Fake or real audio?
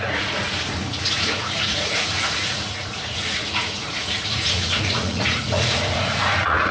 fake